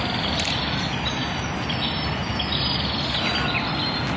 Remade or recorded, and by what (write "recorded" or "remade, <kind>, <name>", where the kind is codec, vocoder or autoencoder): recorded